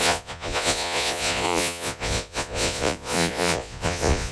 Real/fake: fake